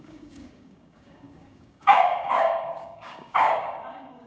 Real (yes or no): no